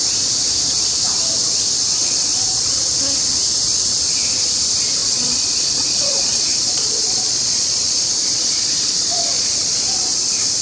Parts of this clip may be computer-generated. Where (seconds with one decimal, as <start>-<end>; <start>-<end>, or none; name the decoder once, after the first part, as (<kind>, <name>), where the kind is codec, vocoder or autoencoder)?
2.0-2.7 (vocoder, Vocos); 5.0-10.1